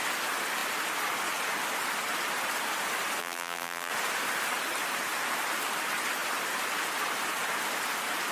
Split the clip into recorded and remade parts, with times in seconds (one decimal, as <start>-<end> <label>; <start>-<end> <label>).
0.0-3.2 recorded; 3.2-3.9 remade; 3.9-8.3 recorded